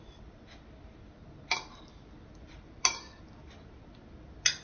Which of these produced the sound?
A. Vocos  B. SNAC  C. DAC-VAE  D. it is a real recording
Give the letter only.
D